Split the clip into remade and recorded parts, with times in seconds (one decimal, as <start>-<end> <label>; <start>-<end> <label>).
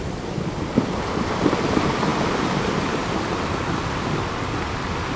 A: 0.0-5.2 recorded